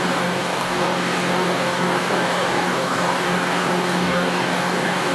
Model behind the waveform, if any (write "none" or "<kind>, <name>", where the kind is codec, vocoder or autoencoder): codec, DAC